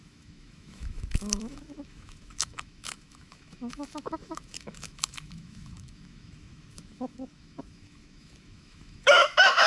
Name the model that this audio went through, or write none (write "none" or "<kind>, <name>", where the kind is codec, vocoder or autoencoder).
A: autoencoder, DAC-VAE